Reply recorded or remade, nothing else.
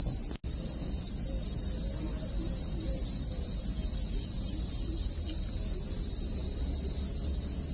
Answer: recorded